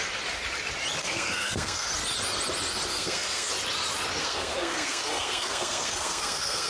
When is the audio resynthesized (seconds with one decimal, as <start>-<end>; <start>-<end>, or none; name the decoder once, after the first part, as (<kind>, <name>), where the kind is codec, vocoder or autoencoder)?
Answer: 1.0-1.9 (codec, SNAC); 2.9-3.5; 4.2-6.7